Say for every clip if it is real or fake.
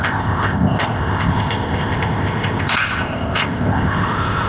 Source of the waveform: fake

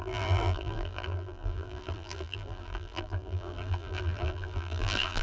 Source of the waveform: fake